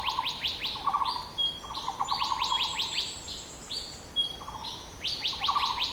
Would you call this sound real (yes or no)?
yes